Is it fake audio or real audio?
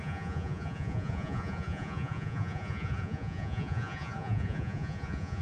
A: fake